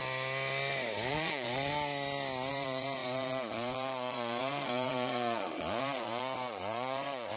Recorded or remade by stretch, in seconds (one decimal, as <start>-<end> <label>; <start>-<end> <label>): 0.0-1.1 recorded; 1.1-1.7 remade; 1.7-2.5 recorded; 2.5-7.4 remade